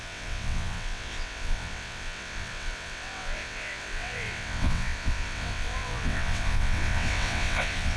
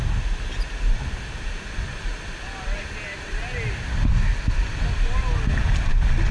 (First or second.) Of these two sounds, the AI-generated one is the first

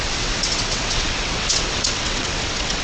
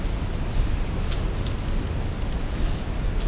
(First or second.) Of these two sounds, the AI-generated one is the first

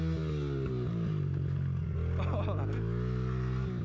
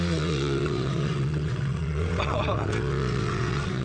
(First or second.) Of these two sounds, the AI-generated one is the second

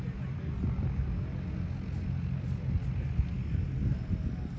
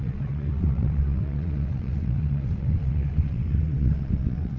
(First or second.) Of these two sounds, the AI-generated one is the second